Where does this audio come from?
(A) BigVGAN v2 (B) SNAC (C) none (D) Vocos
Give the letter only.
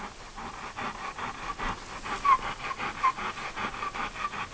C